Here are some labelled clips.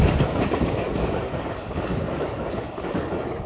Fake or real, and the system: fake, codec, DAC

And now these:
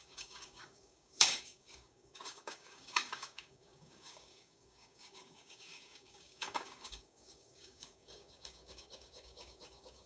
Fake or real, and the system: fake, codec, DAC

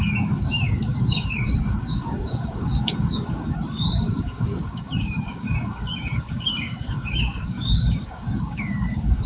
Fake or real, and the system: fake, codec, DAC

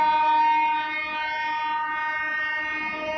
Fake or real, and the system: real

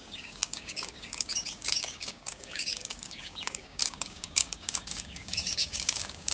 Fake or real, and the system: fake, codec, DAC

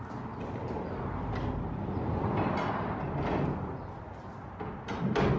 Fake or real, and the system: real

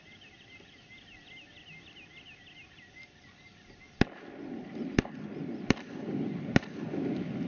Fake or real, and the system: real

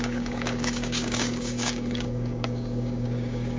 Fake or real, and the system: fake, codec, DAC